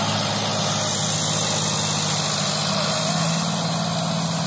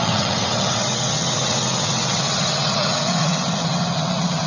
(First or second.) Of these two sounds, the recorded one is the first